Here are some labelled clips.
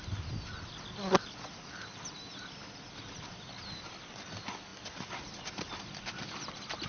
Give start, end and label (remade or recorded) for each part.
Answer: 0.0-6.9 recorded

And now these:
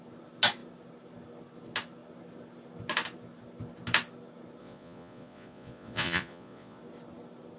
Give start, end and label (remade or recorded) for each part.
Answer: 0.0-4.6 recorded; 4.6-6.8 remade; 6.8-7.6 recorded

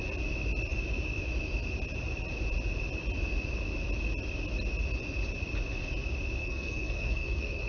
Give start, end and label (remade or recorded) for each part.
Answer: 0.0-6.4 recorded; 6.4-7.7 remade

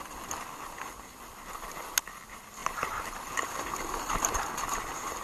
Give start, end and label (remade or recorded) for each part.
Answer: 0.0-2.6 recorded; 2.6-4.1 remade; 4.1-5.2 recorded